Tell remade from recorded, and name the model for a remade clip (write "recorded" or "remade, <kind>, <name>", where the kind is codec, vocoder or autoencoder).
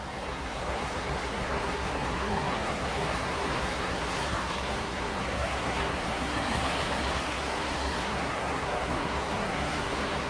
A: remade, codec, SNAC